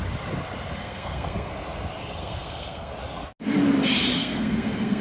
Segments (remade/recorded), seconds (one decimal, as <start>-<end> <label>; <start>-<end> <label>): 0.0-0.8 recorded; 0.8-1.5 remade; 1.5-2.2 recorded; 2.2-2.9 remade; 2.9-4.2 recorded; 4.2-5.0 remade